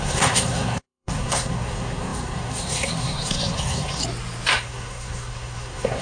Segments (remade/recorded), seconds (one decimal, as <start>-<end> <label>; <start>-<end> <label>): 0.0-4.0 remade; 4.0-4.5 recorded; 4.5-6.0 remade